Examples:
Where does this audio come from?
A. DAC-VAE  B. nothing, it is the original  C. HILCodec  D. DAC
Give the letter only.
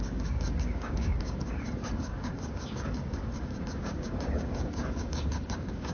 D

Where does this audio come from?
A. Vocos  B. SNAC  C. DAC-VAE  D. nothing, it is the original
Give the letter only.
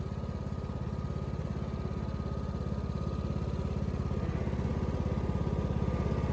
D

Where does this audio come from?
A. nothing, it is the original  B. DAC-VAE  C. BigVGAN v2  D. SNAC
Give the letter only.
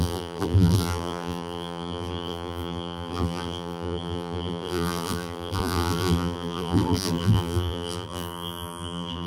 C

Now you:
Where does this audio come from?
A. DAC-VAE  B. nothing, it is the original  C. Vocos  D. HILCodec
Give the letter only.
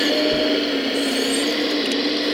B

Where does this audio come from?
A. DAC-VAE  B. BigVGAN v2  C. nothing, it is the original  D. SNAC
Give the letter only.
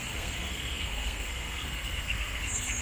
D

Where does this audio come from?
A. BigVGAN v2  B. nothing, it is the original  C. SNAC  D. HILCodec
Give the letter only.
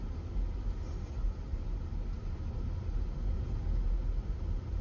B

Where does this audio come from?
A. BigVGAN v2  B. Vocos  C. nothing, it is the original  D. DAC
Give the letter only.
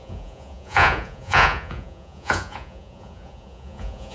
B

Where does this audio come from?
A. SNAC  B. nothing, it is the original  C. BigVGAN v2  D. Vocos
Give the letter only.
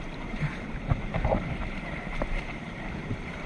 C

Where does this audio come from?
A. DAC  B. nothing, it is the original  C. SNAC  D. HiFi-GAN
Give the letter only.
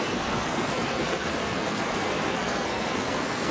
C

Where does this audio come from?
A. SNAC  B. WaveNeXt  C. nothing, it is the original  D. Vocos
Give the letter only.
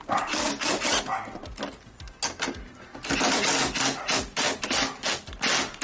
C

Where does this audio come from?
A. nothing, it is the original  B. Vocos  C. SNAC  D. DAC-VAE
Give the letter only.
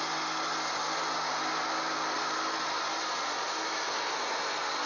A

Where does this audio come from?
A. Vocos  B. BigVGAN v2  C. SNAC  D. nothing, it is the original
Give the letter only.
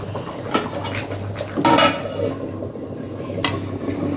D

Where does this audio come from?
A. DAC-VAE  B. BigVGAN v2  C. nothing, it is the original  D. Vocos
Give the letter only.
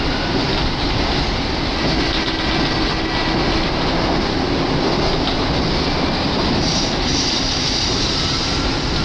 C